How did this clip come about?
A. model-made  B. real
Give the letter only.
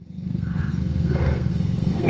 A